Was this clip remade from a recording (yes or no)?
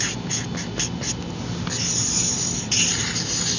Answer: no